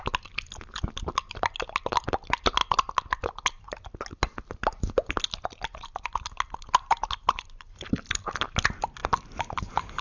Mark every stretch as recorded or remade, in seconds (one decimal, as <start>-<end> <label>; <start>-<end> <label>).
0.0-10.0 recorded